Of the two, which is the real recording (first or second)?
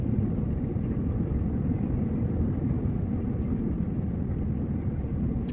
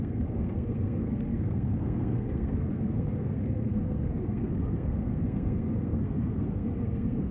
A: first